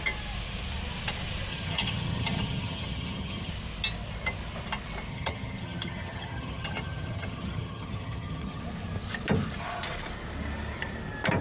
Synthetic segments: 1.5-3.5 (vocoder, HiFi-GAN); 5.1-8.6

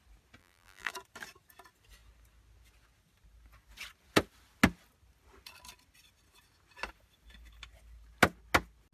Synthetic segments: 0.4-0.9 (vocoder, BigVGAN v2)

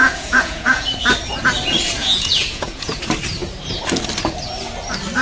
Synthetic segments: 0.0-1.0 (vocoder, Vocos); 2.0-3.0

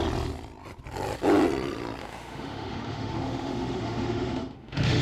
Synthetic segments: 2.0-5.0 (autoencoder, DAC-VAE)